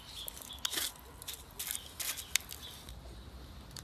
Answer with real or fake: real